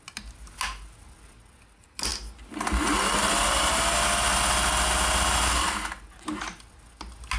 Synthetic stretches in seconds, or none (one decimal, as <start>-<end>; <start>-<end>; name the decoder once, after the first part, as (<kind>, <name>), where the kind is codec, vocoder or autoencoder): none